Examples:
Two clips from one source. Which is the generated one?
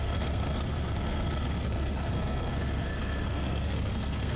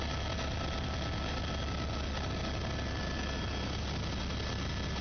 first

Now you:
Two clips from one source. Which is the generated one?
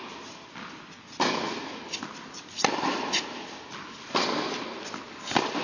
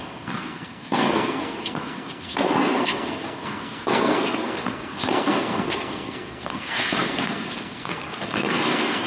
second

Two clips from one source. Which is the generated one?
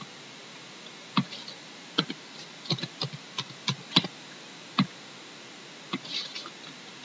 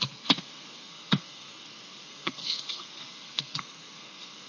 second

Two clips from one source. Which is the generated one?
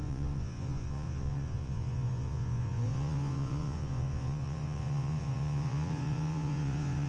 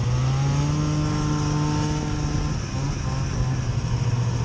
first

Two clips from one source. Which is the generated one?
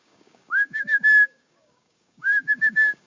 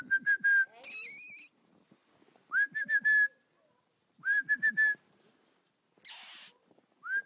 first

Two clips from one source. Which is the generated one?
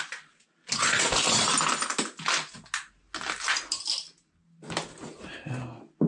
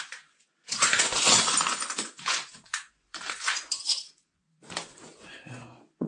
second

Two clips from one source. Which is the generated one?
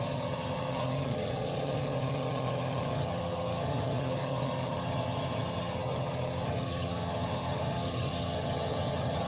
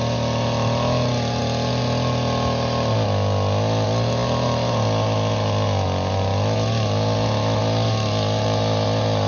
first